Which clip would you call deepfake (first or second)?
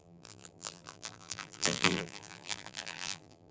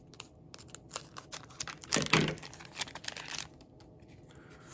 first